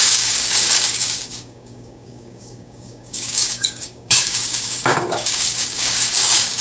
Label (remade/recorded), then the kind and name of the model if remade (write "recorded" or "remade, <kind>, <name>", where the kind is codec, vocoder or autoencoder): remade, codec, DAC